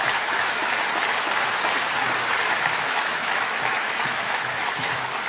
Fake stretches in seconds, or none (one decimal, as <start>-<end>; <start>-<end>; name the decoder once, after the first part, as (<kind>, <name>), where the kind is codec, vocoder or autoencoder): 0.0-0.6 (autoencoder, DAC-VAE); 2.3-5.3

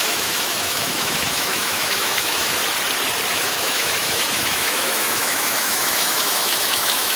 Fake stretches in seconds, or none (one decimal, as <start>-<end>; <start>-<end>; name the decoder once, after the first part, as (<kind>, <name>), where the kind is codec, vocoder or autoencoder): 0.0-2.6 (autoencoder, DAC-VAE); 3.3-7.2

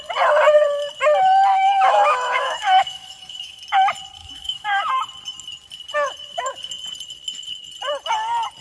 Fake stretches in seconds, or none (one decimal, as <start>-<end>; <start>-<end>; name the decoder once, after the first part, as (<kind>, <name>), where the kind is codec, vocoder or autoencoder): 1.5-3.6 (autoencoder, DAC-VAE); 4.2-4.9

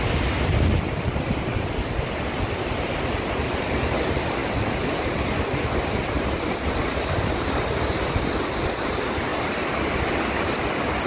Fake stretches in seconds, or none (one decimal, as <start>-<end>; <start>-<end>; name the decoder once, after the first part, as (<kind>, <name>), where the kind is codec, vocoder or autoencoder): none

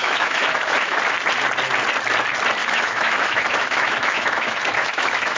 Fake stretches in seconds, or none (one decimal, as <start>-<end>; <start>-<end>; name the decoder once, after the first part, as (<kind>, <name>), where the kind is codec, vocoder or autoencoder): 0.0-1.0 (autoencoder, DAC-VAE); 2.6-5.4

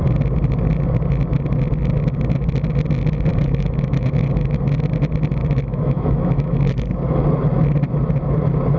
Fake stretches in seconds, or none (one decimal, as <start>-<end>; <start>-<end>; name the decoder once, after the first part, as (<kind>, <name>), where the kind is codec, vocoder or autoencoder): 3.3-4.6 (autoencoder, DAC-VAE); 5.4-6.7

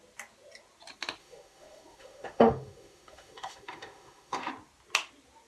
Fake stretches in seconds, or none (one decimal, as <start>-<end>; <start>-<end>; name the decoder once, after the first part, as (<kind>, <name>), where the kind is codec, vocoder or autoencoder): 1.2-4.5 (autoencoder, DAC-VAE)

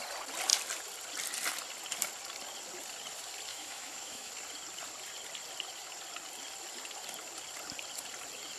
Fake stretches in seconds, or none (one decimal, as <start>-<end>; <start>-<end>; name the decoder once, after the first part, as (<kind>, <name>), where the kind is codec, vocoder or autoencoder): 3.5-4.3 (autoencoder, DAC-VAE)